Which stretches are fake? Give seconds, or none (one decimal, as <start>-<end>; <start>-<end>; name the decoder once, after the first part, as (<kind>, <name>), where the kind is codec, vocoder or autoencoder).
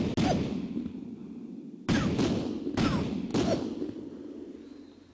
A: none